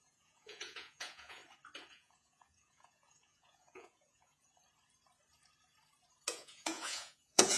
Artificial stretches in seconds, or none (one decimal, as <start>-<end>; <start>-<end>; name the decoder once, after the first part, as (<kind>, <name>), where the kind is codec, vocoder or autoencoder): 0.0-1.4 (vocoder, Vocos); 1.9-4.5; 6.3-7.6